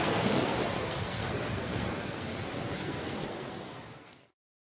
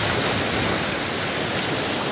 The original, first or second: second